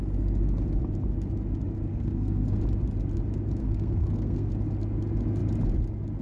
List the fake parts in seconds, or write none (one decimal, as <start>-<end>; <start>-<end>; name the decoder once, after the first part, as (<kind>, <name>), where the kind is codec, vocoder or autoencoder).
1.9-2.6 (codec, SNAC); 3.6-4.5